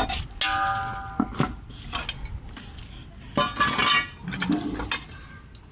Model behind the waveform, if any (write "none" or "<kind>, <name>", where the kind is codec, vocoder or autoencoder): none